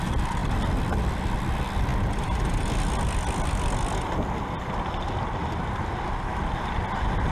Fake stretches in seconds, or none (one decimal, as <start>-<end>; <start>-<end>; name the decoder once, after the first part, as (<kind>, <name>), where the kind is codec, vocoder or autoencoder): none